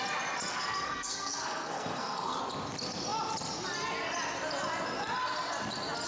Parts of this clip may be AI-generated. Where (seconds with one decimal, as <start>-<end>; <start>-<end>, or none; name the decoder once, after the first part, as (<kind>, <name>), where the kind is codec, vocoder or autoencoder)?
0.5-2.4 (codec, SNAC)